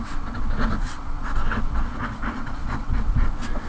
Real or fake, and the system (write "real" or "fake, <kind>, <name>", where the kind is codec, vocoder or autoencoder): fake, vocoder, WaveNeXt